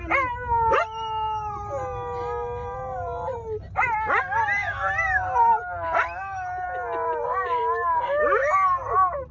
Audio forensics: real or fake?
real